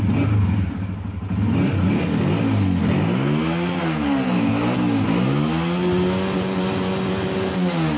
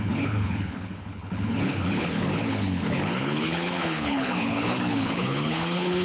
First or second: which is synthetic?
second